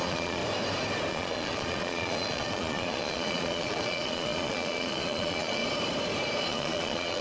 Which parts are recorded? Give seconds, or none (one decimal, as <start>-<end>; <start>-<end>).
0.4-1.1; 5.6-6.4